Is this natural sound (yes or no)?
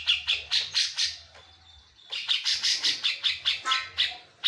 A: no